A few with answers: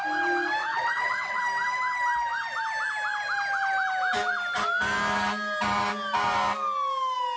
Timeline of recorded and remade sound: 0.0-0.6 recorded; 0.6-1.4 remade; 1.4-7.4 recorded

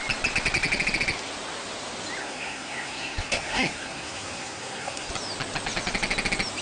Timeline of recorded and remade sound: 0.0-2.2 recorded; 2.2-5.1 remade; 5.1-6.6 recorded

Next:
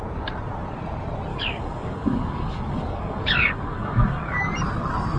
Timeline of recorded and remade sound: 0.0-1.3 recorded; 1.3-4.4 remade; 4.4-5.2 recorded